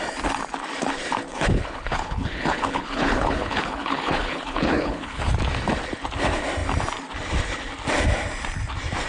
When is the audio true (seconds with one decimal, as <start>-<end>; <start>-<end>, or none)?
0.0-1.3; 5.2-9.1